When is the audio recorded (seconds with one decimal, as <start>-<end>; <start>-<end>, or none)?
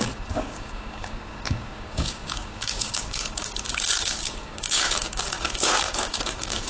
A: none